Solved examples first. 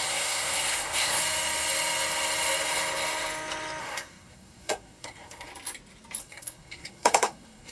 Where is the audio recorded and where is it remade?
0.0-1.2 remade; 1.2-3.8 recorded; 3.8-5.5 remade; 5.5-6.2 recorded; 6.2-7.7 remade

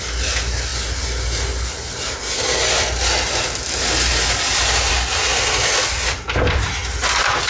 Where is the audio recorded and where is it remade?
0.0-7.5 recorded

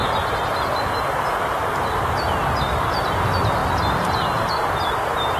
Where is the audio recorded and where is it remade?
0.0-5.4 recorded